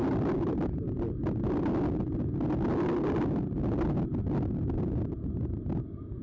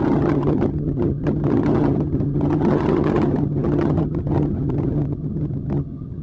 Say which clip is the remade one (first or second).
second